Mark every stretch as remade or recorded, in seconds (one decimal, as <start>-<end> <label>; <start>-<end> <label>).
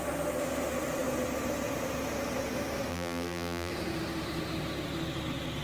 0.0-2.9 recorded; 2.9-3.7 remade; 3.7-5.6 recorded